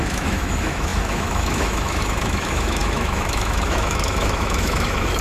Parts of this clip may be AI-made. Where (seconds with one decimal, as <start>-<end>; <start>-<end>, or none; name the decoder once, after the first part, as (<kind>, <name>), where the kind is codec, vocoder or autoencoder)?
0.0-5.2 (autoencoder, DAC-VAE)